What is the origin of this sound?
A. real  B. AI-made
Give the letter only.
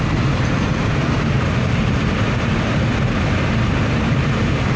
B